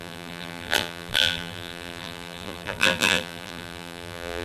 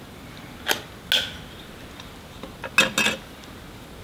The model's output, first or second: first